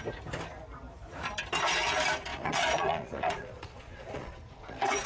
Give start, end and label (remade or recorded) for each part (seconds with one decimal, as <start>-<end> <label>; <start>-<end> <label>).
0.0-2.3 recorded; 2.3-5.1 remade